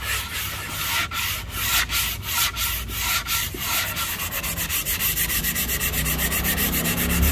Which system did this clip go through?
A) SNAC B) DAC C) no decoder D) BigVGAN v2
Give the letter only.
C